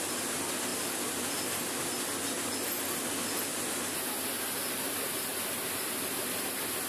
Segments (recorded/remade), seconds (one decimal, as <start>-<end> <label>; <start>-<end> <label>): 0.0-0.7 recorded; 0.7-1.8 remade; 1.8-3.5 recorded; 3.5-4.1 remade; 4.1-5.3 recorded; 5.3-6.9 remade

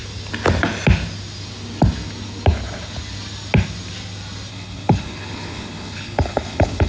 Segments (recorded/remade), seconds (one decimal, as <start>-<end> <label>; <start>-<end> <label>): 0.0-4.5 recorded; 4.5-6.9 remade

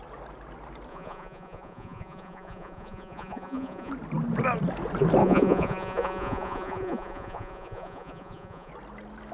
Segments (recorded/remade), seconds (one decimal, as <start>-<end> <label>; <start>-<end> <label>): 0.0-0.9 recorded; 0.9-3.9 remade; 3.9-5.2 recorded; 5.2-8.7 remade; 8.7-9.3 recorded

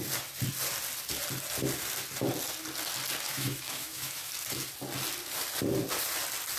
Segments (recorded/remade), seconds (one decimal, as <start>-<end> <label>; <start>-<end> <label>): 0.0-3.3 recorded; 3.3-4.3 remade; 4.3-6.6 recorded

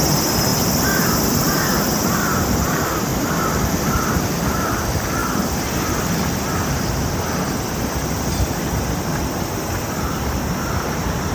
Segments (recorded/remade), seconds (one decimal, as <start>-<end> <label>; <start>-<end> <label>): 0.0-0.5 recorded; 0.5-2.2 remade; 2.2-3.1 recorded; 3.1-3.9 remade; 3.9-5.2 recorded; 5.2-7.1 remade; 7.1-11.3 recorded

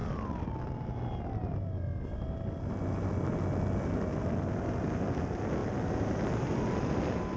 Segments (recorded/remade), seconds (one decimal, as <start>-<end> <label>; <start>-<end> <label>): 0.0-7.4 recorded

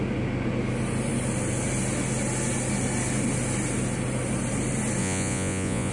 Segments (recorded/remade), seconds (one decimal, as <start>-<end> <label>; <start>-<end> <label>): 0.0-5.0 recorded; 5.0-5.9 remade

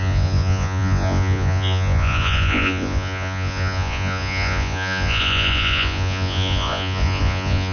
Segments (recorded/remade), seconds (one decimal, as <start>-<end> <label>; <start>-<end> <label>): 0.0-7.7 remade